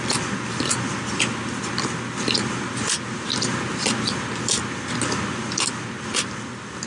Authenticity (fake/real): real